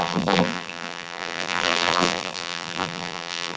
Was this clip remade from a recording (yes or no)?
yes